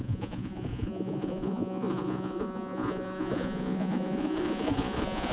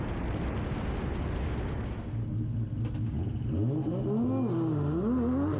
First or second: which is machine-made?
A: first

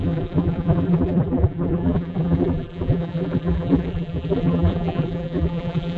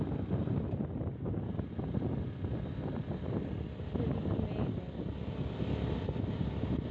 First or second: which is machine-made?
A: first